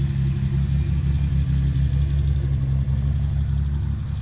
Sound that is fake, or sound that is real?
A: real